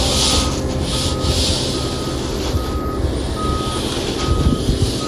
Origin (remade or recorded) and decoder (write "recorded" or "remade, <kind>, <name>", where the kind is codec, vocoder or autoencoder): recorded